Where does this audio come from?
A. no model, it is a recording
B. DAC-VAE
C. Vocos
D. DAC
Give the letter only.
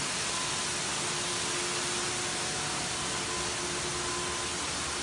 A